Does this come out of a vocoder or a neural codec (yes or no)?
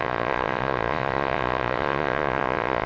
yes